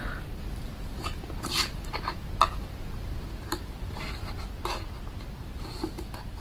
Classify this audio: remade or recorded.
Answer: recorded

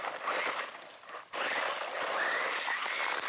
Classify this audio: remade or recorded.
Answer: recorded